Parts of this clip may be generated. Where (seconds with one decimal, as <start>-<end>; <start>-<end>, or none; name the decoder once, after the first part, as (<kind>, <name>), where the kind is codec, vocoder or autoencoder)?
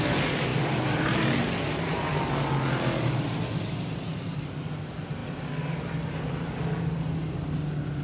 none